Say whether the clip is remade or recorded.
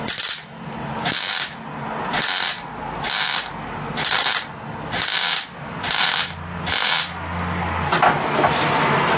recorded